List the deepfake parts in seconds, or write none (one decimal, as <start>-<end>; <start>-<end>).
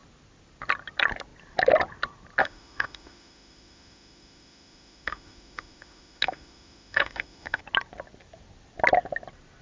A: 2.4-7.6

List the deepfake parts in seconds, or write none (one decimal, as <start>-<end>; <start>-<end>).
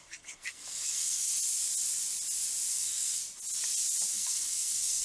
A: 0.0-1.3; 2.7-3.2; 4.1-5.0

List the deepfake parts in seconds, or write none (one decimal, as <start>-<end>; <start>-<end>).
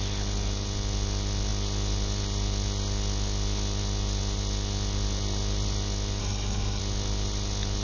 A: 6.2-6.8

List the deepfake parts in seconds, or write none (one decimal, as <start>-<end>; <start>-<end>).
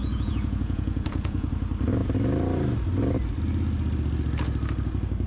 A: 0.0-1.5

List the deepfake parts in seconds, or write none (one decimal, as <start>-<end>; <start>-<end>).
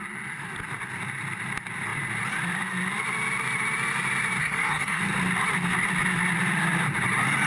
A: 4.4-5.0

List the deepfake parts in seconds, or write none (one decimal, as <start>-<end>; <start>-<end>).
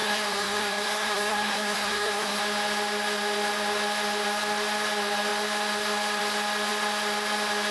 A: 0.0-2.4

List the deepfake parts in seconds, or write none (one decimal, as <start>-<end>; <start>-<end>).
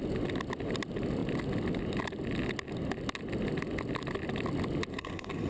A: 4.9-5.5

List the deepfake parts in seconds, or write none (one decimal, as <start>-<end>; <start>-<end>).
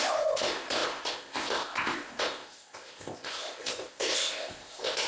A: 0.0-5.1